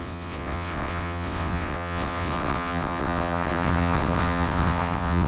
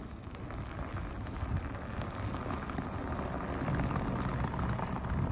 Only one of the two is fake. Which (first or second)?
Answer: first